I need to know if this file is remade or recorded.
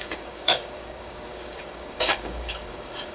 remade